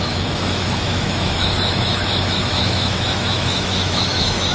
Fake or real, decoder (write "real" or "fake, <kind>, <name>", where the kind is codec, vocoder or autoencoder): fake, autoencoder, DAC-VAE